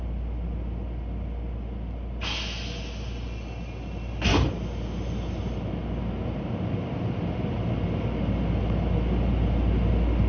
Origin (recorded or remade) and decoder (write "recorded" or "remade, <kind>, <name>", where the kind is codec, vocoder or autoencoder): recorded